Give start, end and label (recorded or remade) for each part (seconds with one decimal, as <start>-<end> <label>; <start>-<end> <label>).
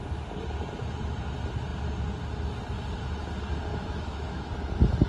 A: 0.0-3.7 recorded; 3.7-4.5 remade; 4.5-5.1 recorded